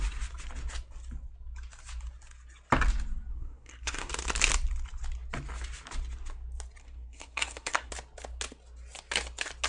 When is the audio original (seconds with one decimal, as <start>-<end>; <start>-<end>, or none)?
0.0-3.3; 4.1-6.8; 7.9-9.7